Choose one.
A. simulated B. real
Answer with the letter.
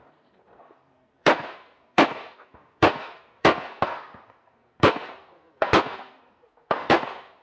A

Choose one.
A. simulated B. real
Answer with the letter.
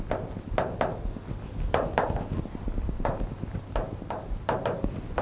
B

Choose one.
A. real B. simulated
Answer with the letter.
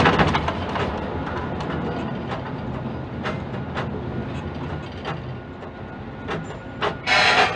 A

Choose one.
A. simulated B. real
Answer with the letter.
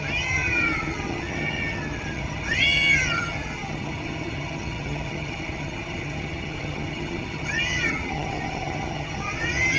A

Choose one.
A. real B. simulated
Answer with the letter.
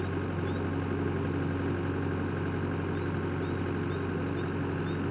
A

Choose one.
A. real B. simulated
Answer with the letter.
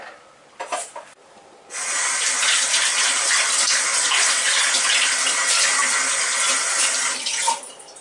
A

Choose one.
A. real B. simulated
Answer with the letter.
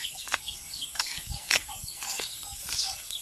B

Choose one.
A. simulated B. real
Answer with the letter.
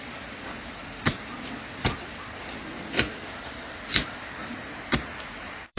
A